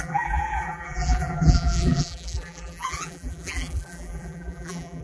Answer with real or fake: fake